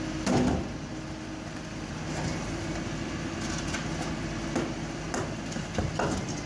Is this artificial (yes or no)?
no